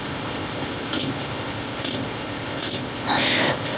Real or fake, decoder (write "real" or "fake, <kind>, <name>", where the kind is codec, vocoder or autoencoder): fake, codec, ZipCodec